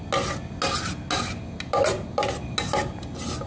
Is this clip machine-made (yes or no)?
no